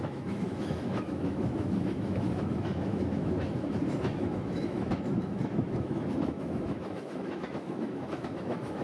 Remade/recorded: remade